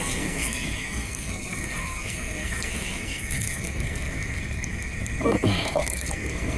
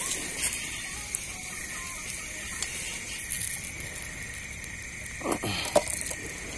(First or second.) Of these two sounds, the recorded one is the second